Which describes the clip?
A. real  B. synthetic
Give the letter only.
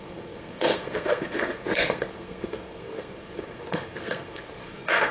B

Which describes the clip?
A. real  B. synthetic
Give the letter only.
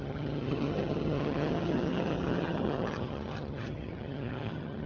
B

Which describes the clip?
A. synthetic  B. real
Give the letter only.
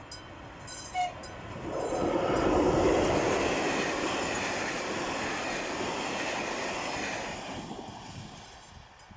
B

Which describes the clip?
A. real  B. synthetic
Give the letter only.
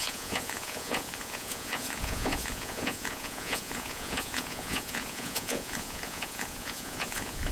B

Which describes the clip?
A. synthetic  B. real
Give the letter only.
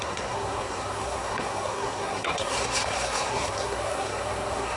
A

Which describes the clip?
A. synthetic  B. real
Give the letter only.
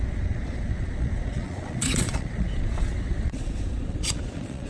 A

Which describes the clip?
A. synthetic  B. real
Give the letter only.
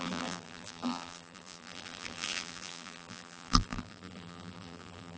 A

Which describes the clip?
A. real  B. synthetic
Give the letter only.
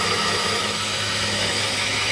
B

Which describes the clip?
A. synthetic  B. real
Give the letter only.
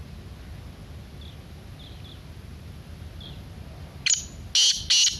B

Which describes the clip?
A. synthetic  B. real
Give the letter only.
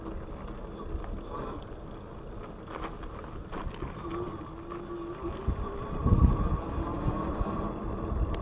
B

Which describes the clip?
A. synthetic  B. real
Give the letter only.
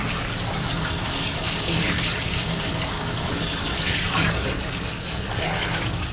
A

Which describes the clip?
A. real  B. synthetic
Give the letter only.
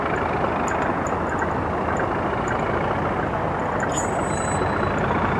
A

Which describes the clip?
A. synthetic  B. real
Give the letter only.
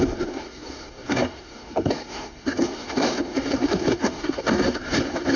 A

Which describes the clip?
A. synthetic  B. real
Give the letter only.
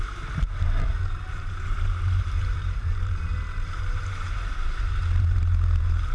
A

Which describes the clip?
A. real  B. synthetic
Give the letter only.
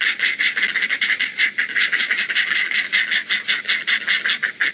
A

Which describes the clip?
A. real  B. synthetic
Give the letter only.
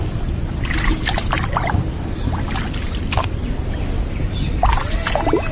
A